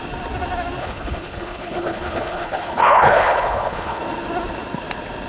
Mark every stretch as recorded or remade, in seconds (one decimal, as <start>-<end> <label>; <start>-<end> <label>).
0.0-0.8 recorded; 0.8-4.0 remade; 4.0-5.3 recorded

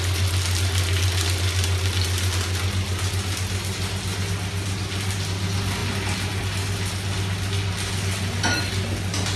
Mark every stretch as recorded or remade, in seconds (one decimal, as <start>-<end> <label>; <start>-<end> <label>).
0.0-9.4 recorded

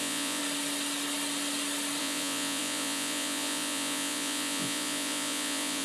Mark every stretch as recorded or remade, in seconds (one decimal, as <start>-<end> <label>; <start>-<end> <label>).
0.0-0.4 remade; 0.4-2.0 recorded; 2.0-5.8 remade

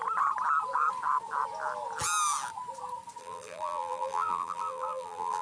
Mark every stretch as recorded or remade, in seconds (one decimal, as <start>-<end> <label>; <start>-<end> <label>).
0.0-3.2 recorded; 3.2-5.4 remade

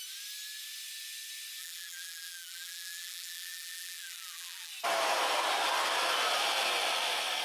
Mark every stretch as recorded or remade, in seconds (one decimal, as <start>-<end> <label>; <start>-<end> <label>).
0.0-1.6 recorded; 1.6-4.7 remade; 4.7-7.4 recorded

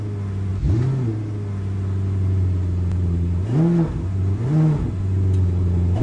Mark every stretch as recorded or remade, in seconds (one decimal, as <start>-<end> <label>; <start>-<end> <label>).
0.0-6.0 recorded

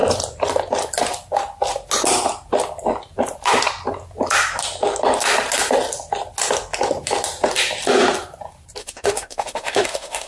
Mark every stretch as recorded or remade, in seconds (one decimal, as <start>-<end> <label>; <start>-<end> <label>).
0.0-8.8 recorded; 8.8-10.3 remade

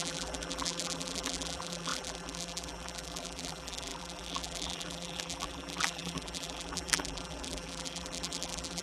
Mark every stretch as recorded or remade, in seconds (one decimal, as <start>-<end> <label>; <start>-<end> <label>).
0.0-8.8 remade